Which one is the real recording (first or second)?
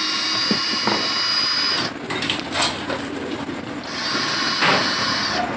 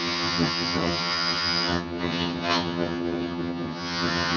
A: first